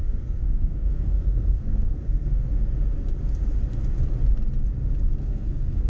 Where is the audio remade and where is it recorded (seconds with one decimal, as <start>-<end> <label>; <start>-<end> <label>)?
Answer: 0.0-2.5 remade; 2.5-5.2 recorded; 5.2-5.9 remade